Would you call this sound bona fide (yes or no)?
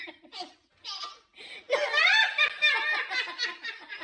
yes